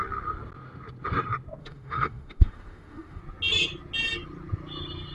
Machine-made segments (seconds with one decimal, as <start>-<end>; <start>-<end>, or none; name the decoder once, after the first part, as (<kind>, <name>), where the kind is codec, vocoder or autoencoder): 1.6-3.2 (autoencoder, DAC-VAE)